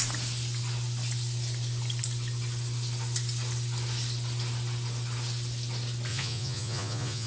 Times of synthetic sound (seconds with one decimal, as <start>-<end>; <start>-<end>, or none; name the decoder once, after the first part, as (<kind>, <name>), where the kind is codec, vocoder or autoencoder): 6.1-7.3 (vocoder, Vocos)